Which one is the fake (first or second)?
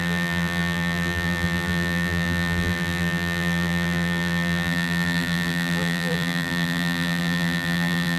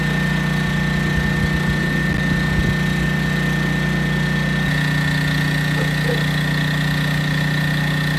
first